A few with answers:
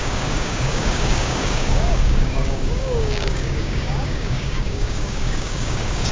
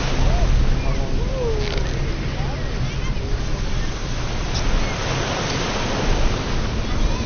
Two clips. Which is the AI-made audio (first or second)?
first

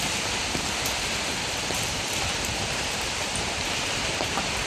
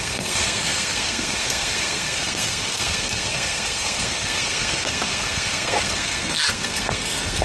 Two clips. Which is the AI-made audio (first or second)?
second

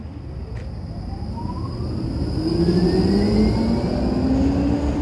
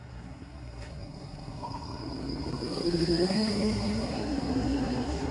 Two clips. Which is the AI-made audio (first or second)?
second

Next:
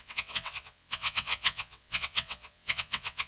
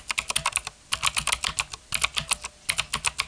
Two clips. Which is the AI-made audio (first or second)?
first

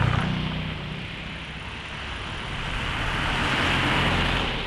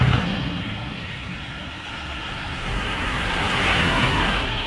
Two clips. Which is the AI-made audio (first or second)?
second